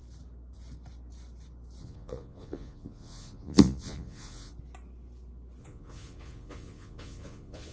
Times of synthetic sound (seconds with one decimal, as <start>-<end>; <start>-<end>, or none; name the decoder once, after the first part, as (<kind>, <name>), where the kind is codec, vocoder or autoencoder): 1.8-4.5 (vocoder, Vocos); 5.6-7.7